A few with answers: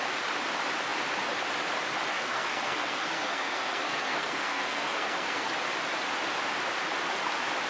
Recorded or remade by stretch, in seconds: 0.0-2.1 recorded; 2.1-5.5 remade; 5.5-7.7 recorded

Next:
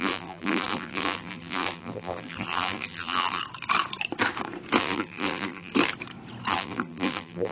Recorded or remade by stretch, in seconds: 0.0-3.4 remade; 3.4-4.8 recorded; 4.8-5.7 remade; 5.7-6.5 recorded; 6.5-7.5 remade

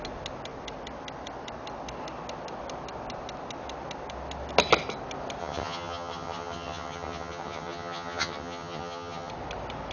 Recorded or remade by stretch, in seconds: 0.0-5.4 recorded; 5.4-9.3 remade; 9.3-9.9 recorded

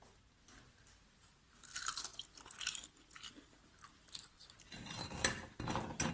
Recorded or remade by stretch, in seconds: 0.0-6.1 recorded

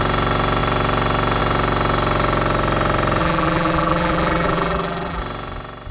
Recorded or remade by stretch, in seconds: 0.0-3.2 recorded; 3.2-5.2 remade; 5.2-5.9 recorded

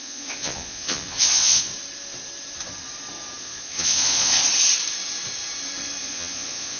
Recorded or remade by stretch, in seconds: 0.0-1.7 remade; 1.7-3.4 recorded; 3.4-4.4 remade; 4.4-6.0 recorded; 6.0-6.8 remade

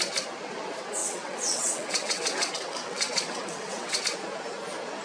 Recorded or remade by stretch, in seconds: 0.0-1.0 recorded; 1.0-4.0 remade; 4.0-5.0 recorded

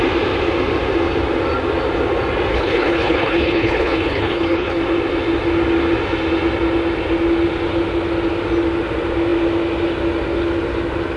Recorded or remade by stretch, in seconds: 0.0-2.5 recorded; 2.5-4.8 remade; 4.8-11.2 recorded